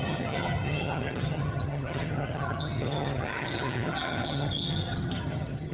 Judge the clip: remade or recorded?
remade